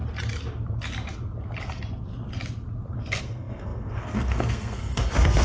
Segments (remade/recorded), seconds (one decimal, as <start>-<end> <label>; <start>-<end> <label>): 0.0-3.2 recorded; 3.2-5.4 remade